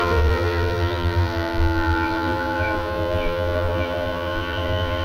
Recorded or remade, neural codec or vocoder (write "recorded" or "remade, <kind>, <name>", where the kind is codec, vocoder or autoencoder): remade, vocoder, BigVGAN v2